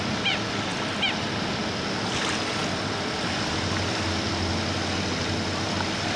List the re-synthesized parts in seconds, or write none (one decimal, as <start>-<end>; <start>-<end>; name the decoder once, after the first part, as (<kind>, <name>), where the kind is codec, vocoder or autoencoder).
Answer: none